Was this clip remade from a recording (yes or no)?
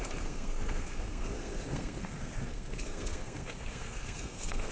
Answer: yes